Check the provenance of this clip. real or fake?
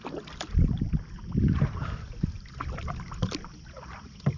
real